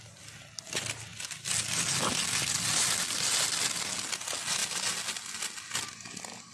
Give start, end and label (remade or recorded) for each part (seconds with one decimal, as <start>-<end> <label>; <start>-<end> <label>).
0.0-6.5 recorded

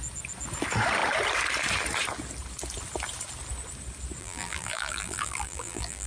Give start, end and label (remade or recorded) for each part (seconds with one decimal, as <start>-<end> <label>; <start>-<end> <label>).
0.0-4.2 recorded; 4.2-6.1 remade

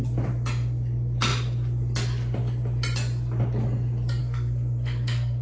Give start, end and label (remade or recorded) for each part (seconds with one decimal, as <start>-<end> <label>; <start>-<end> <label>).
0.0-4.2 recorded; 4.2-5.4 remade